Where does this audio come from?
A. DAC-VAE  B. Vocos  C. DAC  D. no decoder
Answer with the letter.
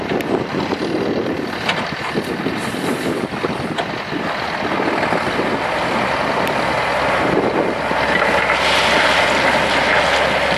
D